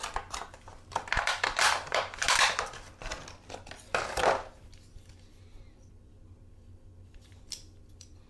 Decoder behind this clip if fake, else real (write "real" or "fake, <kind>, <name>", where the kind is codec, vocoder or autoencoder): fake, vocoder, BigVGAN v2